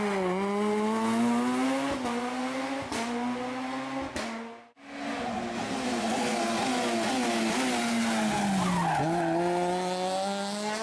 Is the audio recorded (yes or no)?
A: yes